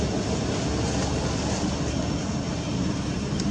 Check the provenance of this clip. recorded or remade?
recorded